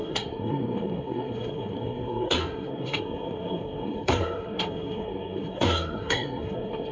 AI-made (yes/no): yes